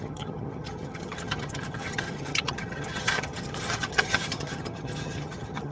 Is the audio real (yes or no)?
no